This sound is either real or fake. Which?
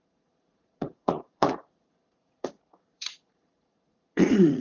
fake